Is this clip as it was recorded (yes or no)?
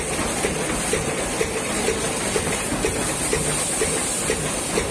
yes